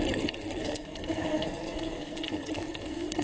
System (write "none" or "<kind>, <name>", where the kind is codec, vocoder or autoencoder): codec, SNAC